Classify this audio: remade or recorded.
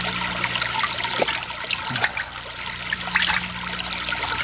recorded